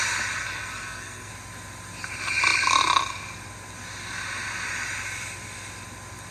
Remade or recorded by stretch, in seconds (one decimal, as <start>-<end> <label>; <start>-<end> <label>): 0.0-0.4 recorded; 0.4-1.3 remade; 1.3-6.3 recorded